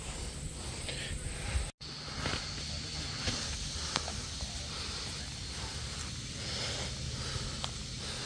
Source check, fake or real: real